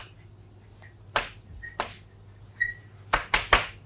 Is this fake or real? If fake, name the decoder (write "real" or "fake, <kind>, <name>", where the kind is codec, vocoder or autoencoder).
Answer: real